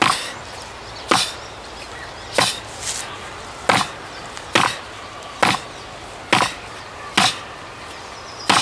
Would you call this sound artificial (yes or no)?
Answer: no